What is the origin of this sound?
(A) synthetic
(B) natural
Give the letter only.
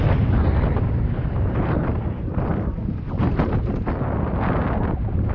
B